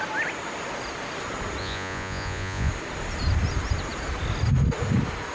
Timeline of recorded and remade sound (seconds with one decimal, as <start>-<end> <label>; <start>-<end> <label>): 0.0-1.6 recorded; 1.6-2.7 remade; 2.7-5.3 recorded